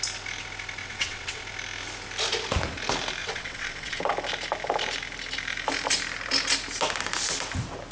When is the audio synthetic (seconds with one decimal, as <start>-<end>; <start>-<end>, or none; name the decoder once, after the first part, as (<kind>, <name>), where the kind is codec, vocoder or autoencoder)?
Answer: 0.8-1.4 (vocoder, WaveNeXt); 3.2-4.0